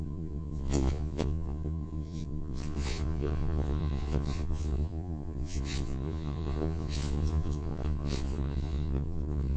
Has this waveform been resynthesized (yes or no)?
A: yes